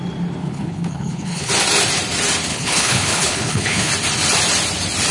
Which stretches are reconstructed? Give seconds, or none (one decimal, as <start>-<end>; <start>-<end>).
0.4-1.5; 2.5-3.9